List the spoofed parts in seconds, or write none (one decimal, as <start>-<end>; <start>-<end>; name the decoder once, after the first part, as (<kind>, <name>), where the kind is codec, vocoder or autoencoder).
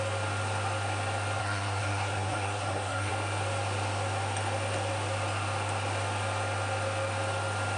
1.4-3.1 (codec, SNAC)